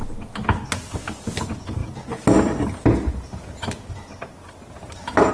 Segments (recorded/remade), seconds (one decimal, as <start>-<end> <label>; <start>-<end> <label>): 0.0-5.3 recorded